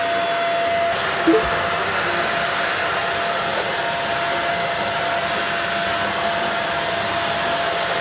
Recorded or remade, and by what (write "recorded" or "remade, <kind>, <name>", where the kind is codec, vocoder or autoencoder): recorded